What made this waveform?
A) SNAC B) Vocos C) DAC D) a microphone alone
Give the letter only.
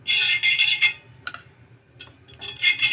D